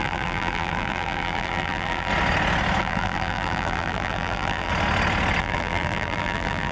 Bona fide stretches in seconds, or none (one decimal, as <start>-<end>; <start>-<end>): 2.1-2.8; 4.7-5.4